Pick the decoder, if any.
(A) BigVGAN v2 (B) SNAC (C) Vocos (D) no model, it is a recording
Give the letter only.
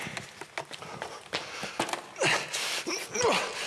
D